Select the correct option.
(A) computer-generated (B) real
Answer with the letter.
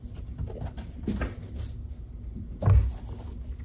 B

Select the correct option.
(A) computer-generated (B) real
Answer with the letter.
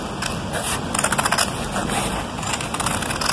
B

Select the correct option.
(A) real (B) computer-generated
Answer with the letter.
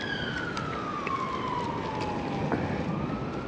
A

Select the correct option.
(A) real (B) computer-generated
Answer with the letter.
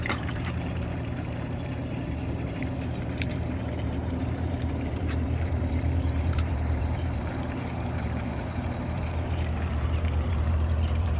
B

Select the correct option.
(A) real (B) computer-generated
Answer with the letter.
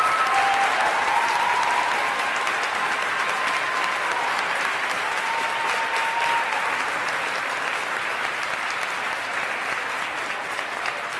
A